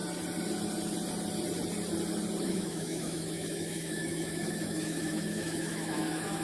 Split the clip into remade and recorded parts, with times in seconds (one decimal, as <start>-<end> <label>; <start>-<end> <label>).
0.0-2.4 recorded; 2.4-6.4 remade